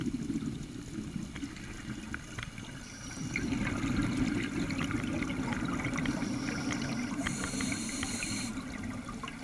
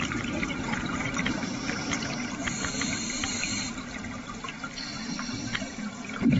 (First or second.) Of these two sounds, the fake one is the second